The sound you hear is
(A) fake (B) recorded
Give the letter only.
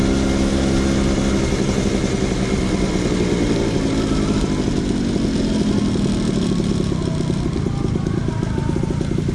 B